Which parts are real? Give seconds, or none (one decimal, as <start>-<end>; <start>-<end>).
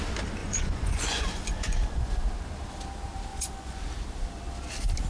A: 0.0-0.4; 2.1-3.3; 3.8-5.1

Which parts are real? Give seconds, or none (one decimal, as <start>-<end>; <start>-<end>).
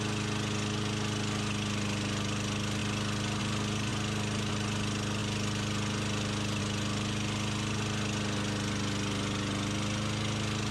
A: 0.0-10.7